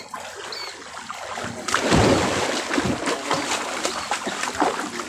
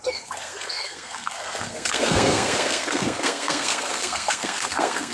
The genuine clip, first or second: first